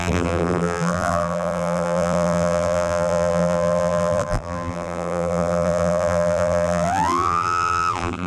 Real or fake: fake